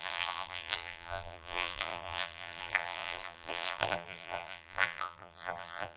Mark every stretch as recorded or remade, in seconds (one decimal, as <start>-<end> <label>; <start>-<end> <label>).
0.0-6.0 remade